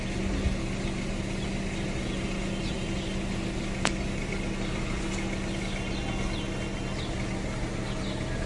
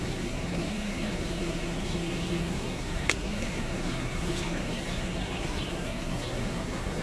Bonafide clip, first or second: first